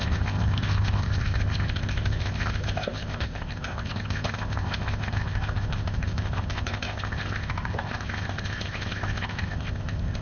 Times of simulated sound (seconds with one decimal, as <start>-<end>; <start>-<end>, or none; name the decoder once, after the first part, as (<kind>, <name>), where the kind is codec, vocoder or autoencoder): 0.0-10.2 (codec, ZipCodec)